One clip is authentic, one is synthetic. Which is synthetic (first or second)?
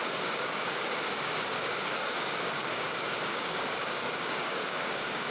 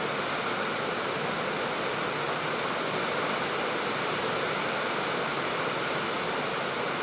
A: first